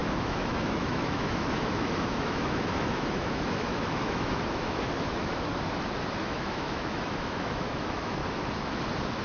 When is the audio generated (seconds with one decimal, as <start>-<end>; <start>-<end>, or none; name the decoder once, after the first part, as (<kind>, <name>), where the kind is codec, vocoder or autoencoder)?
0.0-5.5 (autoencoder, DAC-VAE); 6.2-8.2